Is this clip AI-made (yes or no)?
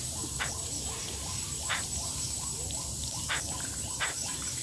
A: yes